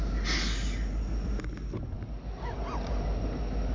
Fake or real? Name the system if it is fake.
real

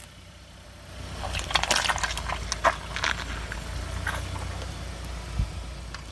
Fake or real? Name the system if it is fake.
real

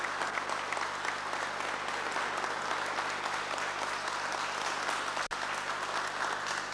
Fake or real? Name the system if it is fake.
real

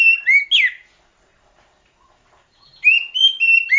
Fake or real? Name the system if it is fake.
real